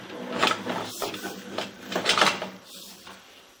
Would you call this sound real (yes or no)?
no